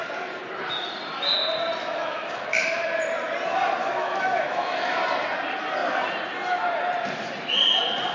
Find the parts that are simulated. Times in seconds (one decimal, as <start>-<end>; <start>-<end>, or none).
1.8-2.9; 3.8-5.0